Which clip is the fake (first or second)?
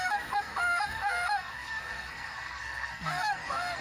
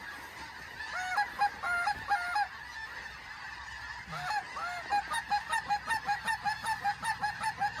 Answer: first